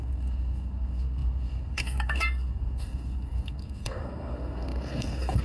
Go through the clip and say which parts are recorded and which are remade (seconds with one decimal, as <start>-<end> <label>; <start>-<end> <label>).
0.0-5.4 remade